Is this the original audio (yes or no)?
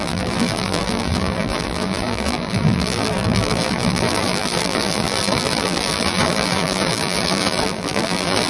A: no